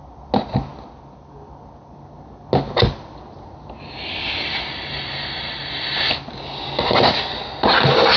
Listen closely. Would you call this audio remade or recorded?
recorded